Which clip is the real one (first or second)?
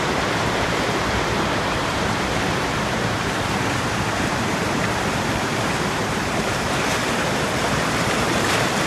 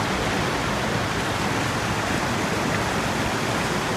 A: second